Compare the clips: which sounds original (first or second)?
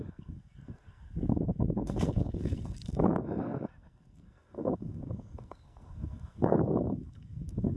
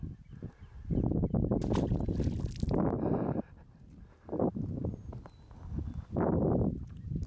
second